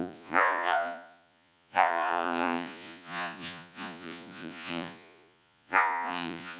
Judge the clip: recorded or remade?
remade